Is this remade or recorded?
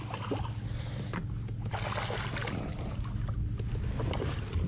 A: recorded